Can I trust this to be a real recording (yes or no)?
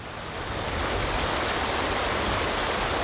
yes